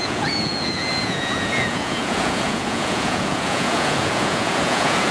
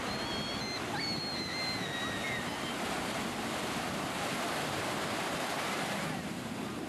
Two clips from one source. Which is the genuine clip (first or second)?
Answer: second